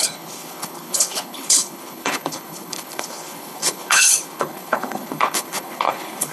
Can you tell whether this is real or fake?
fake